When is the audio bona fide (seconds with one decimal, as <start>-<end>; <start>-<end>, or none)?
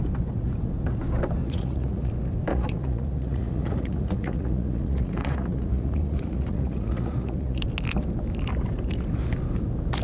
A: 0.0-1.4; 2.1-2.5; 7.6-10.0